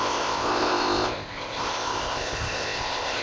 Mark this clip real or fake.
fake